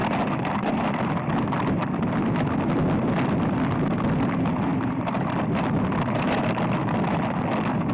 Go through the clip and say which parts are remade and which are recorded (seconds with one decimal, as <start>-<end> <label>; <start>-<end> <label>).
0.0-7.9 recorded